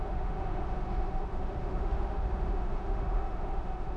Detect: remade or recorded remade